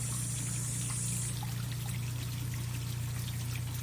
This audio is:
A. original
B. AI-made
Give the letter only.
A